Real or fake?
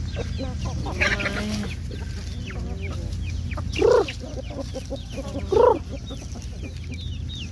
real